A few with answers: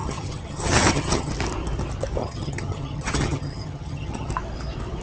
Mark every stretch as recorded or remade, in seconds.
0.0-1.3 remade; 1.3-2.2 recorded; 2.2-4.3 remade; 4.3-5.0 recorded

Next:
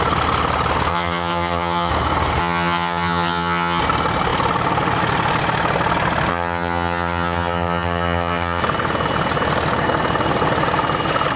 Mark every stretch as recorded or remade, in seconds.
0.0-0.9 recorded; 0.9-1.9 remade; 1.9-2.4 recorded; 2.4-3.8 remade; 3.8-6.3 recorded; 6.3-8.6 remade; 8.6-11.4 recorded

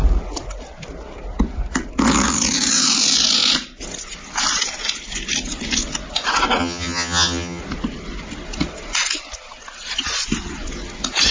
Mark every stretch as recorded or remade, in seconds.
0.0-6.6 recorded; 6.6-7.6 remade; 7.6-11.3 recorded

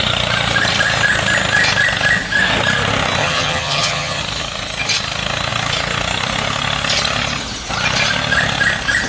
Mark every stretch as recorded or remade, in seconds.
0.0-3.2 recorded; 3.2-4.2 remade; 4.2-9.1 recorded

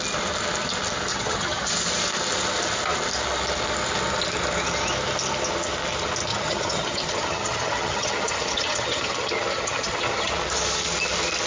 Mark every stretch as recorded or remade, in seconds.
0.0-1.1 recorded; 1.1-1.7 remade; 1.7-6.3 recorded; 6.3-10.3 remade; 10.3-11.5 recorded